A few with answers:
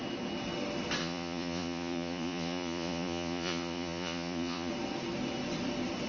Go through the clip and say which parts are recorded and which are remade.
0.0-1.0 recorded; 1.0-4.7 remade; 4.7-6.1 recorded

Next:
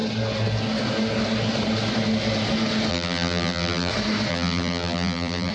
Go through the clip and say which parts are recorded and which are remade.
0.0-2.9 recorded; 2.9-3.9 remade; 3.9-4.3 recorded; 4.3-5.5 remade